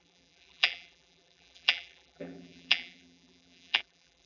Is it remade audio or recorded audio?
remade